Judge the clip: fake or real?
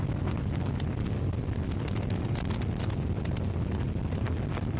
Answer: real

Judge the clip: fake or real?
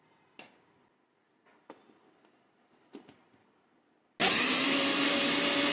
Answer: real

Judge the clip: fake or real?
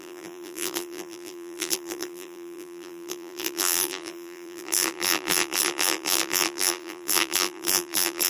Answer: fake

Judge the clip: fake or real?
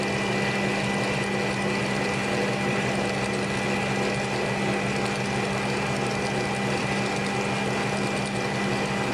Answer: real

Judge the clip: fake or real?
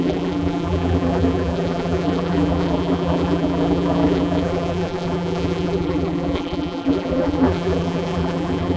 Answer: fake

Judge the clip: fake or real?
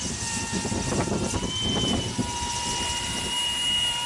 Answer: fake